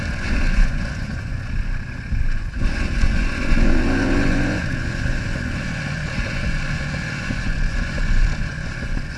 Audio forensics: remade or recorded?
remade